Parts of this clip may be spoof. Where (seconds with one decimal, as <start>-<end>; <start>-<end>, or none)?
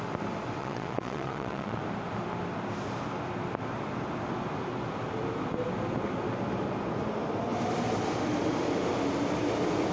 0.6-1.8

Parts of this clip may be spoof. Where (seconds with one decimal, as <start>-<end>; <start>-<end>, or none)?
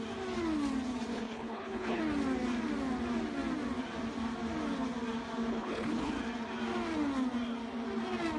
1.1-2.0; 5.5-6.1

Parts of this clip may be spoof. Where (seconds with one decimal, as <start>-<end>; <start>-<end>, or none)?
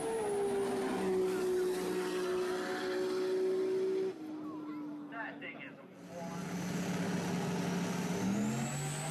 none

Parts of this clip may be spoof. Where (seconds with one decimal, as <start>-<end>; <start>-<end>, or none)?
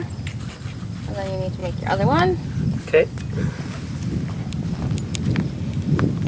none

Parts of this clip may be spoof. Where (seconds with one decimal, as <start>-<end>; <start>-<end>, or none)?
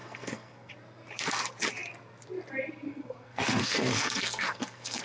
0.0-0.7; 2.9-5.0